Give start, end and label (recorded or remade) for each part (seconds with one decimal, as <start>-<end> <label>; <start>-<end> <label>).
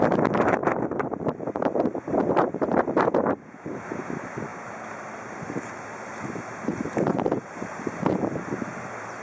0.0-0.6 recorded; 0.6-4.0 remade; 4.0-4.5 recorded; 4.5-9.2 remade